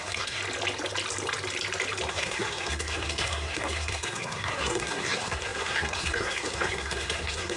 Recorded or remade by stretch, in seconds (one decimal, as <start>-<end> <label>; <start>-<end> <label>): 0.0-0.4 remade; 0.4-2.1 recorded; 2.1-7.6 remade